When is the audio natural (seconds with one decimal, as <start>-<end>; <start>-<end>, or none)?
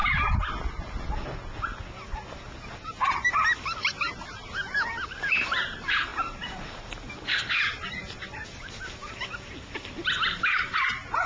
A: 0.0-11.3